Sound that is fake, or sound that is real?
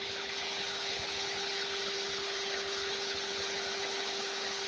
fake